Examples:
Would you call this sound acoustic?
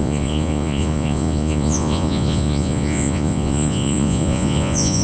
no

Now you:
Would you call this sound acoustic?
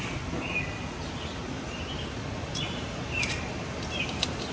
yes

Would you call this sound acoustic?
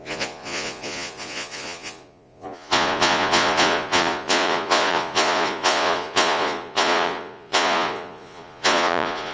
no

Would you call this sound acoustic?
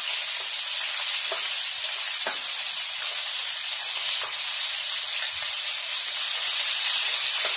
yes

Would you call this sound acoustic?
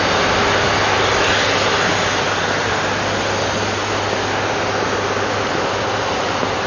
yes